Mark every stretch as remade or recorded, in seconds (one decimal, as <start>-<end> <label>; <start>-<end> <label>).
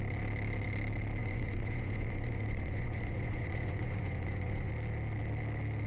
0.0-1.2 recorded; 1.2-4.7 remade; 4.7-5.9 recorded